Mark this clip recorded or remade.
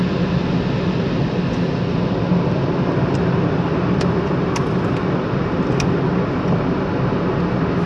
recorded